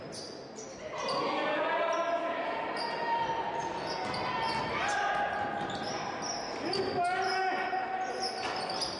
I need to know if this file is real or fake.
real